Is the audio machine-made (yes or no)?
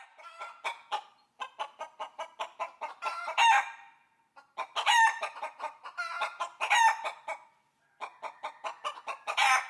no